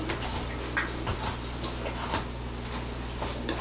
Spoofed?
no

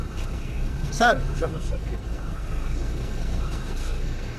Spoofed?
yes